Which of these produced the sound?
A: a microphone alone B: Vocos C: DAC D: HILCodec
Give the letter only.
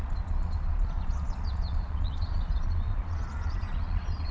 B